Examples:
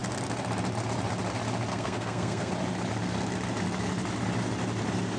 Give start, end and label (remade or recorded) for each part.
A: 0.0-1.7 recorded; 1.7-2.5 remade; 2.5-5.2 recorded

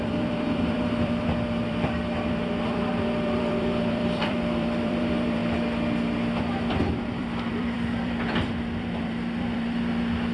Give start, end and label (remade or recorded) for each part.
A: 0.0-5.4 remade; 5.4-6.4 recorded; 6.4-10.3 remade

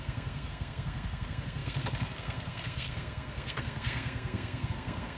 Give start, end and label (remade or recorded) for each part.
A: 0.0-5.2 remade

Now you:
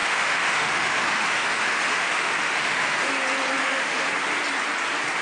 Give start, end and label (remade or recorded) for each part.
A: 0.0-3.1 remade; 3.1-3.6 recorded; 3.6-4.1 remade; 4.1-5.2 recorded

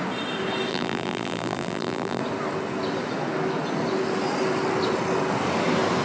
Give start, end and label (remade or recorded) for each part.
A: 0.0-0.7 recorded; 0.7-2.2 remade; 2.2-6.0 recorded

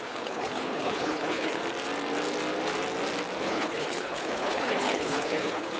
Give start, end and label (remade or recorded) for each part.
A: 0.0-1.6 remade; 1.6-3.4 recorded; 3.4-5.8 remade

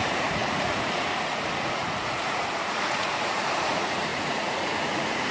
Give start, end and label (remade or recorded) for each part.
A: 0.0-5.3 remade